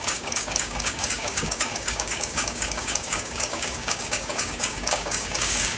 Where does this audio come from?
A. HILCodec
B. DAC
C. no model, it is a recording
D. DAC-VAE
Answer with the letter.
B